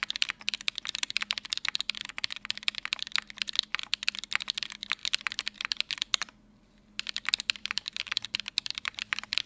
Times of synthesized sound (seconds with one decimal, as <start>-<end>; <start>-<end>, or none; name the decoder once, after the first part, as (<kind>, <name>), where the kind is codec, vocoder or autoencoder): 5.0-7.0 (vocoder, BigVGAN v2); 7.6-9.5